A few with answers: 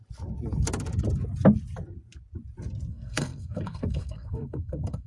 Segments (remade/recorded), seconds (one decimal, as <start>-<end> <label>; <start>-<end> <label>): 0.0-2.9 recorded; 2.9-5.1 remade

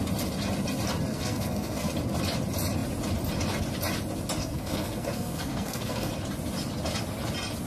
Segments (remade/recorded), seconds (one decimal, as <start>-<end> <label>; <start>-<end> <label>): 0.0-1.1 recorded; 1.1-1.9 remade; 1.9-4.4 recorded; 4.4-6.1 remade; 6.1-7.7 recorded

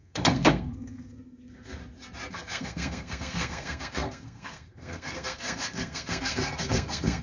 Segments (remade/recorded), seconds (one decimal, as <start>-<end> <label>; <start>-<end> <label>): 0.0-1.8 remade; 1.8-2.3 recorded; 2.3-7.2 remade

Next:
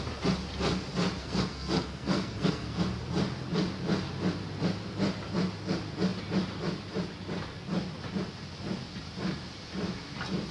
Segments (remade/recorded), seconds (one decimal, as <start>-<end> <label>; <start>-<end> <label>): 0.0-1.2 recorded; 1.2-2.8 remade; 2.8-10.5 recorded